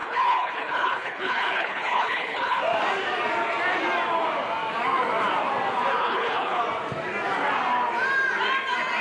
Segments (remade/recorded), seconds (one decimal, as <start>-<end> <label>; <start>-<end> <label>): 0.0-2.6 remade; 2.6-6.0 recorded; 6.0-6.6 remade; 6.6-9.0 recorded